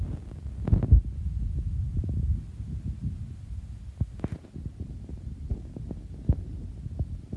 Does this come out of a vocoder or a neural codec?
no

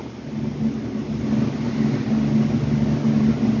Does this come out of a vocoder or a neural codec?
no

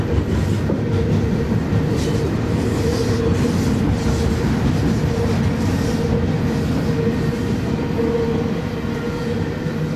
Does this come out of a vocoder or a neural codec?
no